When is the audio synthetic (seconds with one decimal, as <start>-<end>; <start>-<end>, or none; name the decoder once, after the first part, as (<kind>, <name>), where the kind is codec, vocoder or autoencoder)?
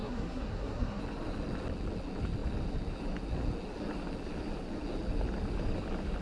0.0-1.0 (codec, SNAC)